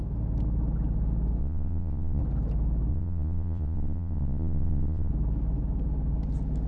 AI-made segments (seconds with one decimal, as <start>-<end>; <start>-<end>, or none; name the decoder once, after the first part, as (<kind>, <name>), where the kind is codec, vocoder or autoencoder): 1.4-2.2 (vocoder, Vocos); 2.9-5.1